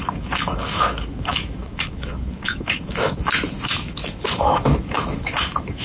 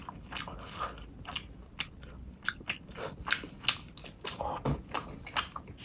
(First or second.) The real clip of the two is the second